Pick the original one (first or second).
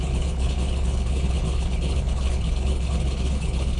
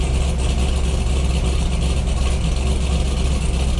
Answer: second